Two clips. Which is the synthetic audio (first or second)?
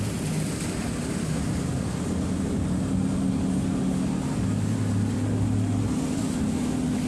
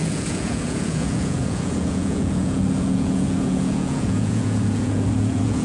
second